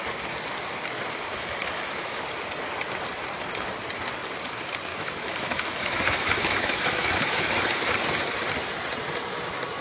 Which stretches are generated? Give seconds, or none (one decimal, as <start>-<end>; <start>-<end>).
1.3-2.2; 4.9-7.6